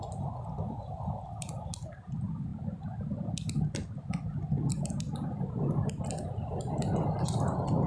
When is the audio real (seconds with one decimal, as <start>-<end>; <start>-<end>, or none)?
0.0-7.9